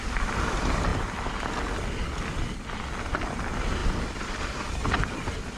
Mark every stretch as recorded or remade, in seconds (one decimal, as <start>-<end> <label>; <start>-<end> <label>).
0.0-5.6 recorded